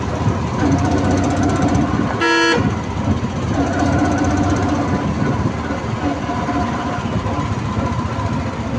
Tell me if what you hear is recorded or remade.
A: recorded